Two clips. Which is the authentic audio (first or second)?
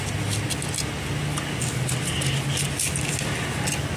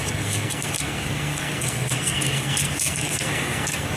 first